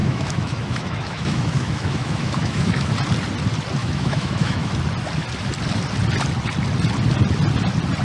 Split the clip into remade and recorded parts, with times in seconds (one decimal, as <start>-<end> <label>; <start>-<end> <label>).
0.0-2.9 remade; 2.9-3.8 recorded; 3.8-4.7 remade; 4.7-8.0 recorded